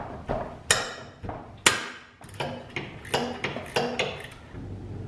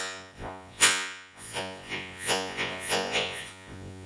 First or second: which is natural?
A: first